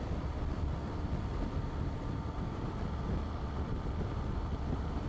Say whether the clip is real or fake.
fake